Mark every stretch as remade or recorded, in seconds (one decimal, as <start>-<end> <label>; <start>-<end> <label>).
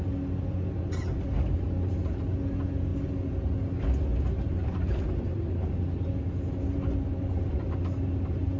0.0-8.6 recorded